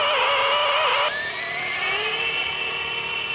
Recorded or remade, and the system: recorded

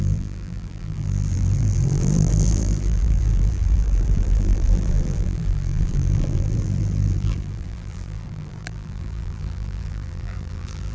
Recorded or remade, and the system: remade, vocoder, BigVGAN v2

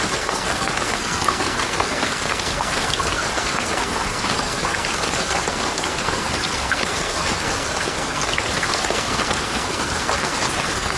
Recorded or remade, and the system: remade, codec, SNAC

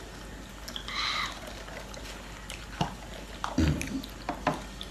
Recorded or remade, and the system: recorded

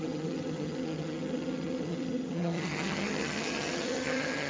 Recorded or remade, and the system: remade, vocoder, HiFi-GAN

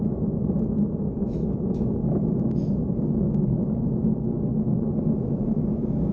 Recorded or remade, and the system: remade, autoencoder, DAC-VAE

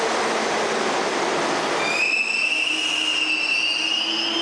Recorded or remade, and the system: recorded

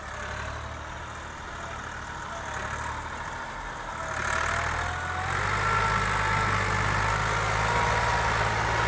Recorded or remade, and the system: recorded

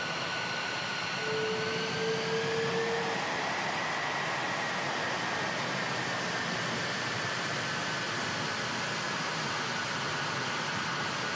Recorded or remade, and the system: recorded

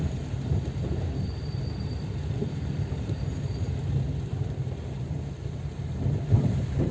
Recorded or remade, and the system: remade, vocoder, BigVGAN v2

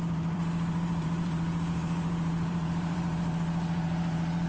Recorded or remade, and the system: remade, vocoder, BigVGAN v2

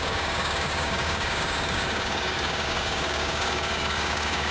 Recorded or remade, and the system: remade, codec, DAC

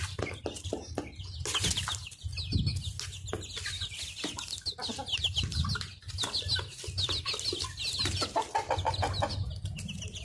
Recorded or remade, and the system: recorded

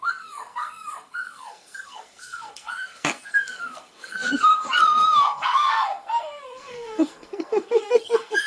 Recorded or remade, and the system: remade, codec, SNAC